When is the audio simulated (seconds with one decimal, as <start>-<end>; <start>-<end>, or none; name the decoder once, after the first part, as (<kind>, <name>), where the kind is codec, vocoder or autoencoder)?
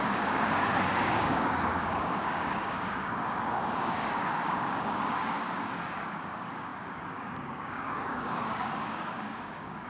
0.0-9.9 (codec, DAC)